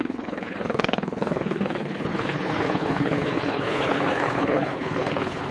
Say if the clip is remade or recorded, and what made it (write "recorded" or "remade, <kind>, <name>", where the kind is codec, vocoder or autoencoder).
remade, codec, HILCodec